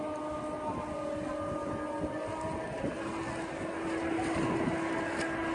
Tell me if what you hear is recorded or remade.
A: recorded